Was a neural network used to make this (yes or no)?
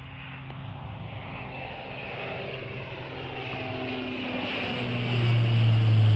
no